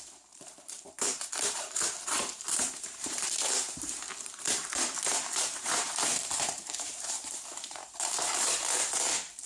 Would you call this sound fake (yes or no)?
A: yes